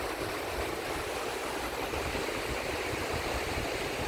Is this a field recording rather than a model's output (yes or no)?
yes